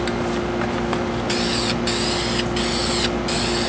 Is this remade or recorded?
recorded